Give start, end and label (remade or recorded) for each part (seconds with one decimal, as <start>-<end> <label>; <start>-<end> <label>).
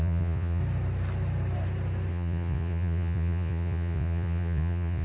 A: 0.0-0.6 remade; 0.6-2.1 recorded; 2.1-5.0 remade